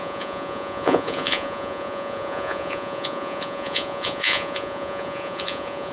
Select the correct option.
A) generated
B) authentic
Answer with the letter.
A